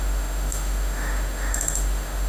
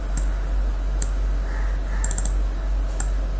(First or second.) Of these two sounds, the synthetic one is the first